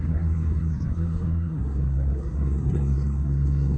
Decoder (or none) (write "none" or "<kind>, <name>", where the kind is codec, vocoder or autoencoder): codec, SNAC